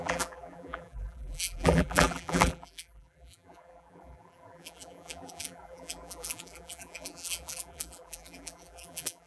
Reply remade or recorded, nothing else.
remade